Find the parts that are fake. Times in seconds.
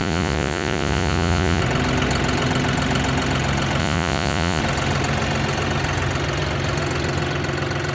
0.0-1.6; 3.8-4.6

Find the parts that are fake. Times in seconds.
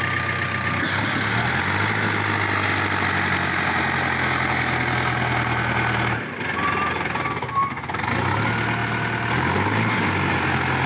none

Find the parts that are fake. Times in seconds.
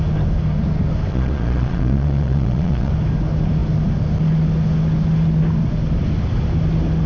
1.1-2.9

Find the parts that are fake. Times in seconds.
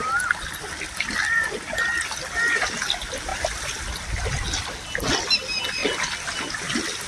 none